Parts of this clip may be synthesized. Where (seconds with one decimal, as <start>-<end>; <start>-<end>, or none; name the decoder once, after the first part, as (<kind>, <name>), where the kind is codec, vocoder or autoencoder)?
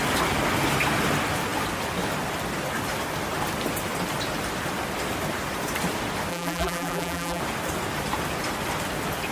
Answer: 6.3-7.4 (vocoder, BigVGAN v2)